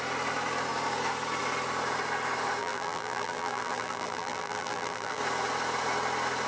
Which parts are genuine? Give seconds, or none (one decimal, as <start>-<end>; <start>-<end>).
0.0-2.6; 5.2-6.5